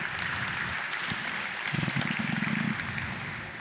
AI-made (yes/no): no